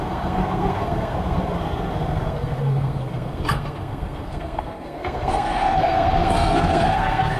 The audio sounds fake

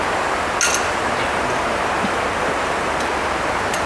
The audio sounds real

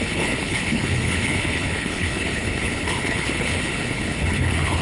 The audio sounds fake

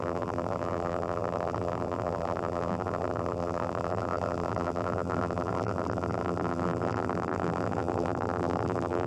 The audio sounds fake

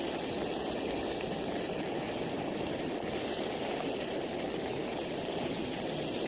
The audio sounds real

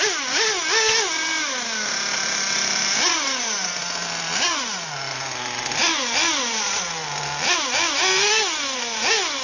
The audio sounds real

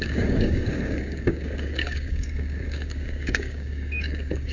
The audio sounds fake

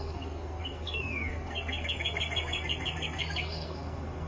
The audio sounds fake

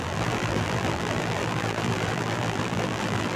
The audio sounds fake